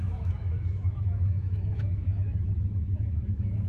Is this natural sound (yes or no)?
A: no